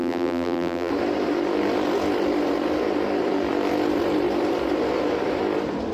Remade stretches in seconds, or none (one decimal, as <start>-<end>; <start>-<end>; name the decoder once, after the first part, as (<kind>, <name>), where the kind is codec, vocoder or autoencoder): 0.0-0.9 (vocoder, BigVGAN v2)